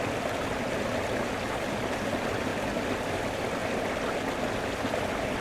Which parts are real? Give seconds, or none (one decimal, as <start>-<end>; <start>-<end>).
0.0-5.4